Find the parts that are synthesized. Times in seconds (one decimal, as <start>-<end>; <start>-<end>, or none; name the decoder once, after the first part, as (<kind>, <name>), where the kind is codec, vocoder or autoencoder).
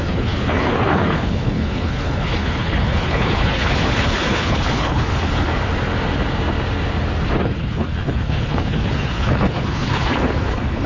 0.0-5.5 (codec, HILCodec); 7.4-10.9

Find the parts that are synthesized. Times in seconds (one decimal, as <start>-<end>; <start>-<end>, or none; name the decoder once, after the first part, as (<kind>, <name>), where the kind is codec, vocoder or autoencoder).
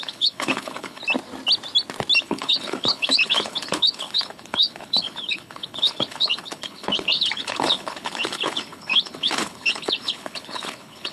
0.0-1.0 (codec, HILCodec); 2.2-11.1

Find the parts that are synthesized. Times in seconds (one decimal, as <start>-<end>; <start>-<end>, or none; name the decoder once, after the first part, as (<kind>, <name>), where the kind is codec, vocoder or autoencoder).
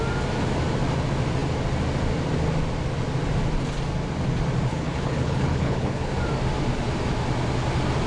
4.7-6.1 (codec, HILCodec)